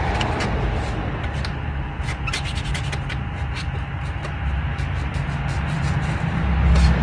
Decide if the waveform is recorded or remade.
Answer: recorded